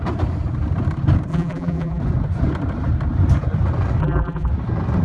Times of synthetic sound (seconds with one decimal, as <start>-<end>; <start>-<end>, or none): 1.3-2.0; 4.0-4.5